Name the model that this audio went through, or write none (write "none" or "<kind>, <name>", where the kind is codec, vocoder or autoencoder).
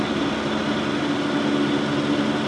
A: none